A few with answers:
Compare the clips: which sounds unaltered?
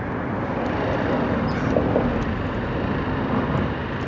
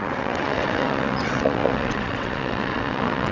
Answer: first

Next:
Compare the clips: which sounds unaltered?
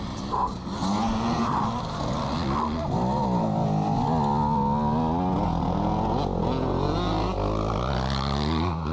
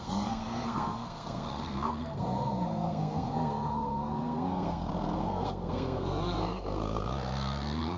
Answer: first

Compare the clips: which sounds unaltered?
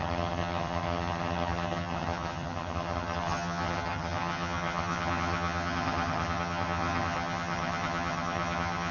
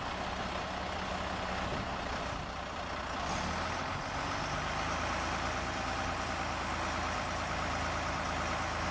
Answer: second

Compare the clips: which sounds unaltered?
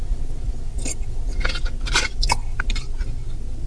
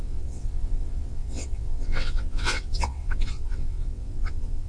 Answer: first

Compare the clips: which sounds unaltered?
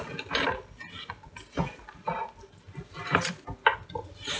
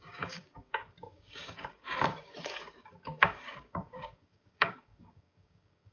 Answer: first